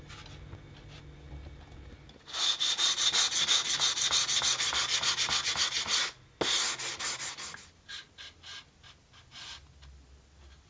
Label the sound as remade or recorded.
recorded